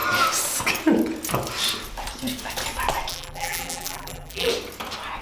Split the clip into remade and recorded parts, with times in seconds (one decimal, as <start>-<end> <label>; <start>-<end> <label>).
0.0-3.1 recorded; 3.1-4.5 remade; 4.5-5.2 recorded